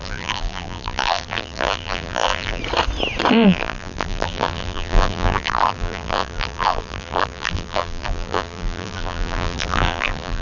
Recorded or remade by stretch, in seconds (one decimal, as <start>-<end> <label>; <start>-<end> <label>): 0.0-2.6 remade; 2.6-3.3 recorded; 3.3-10.4 remade